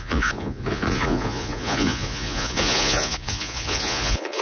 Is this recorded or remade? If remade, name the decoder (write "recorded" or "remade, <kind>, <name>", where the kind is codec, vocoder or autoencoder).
remade, vocoder, Vocos